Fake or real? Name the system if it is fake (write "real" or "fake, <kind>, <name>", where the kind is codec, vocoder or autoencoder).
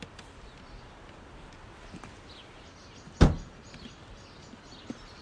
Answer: real